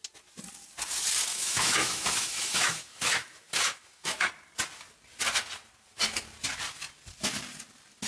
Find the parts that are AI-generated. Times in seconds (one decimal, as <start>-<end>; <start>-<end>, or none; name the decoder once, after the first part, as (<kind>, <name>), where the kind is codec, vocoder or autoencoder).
1.3-4.3 (autoencoder, DAC-VAE)